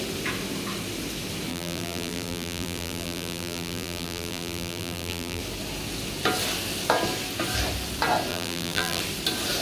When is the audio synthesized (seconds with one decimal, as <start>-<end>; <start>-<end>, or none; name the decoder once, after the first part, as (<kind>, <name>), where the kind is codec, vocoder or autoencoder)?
1.5-5.4 (vocoder, BigVGAN v2); 8.3-9.0